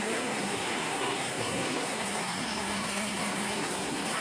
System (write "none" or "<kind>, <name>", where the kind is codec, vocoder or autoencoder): codec, SNAC